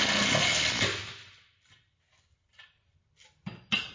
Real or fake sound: real